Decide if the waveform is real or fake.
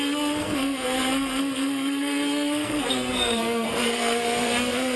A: fake